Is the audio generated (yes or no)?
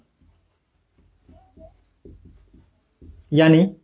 no